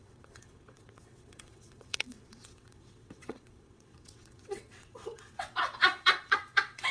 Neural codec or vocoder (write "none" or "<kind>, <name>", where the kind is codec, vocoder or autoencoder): vocoder, WaveNeXt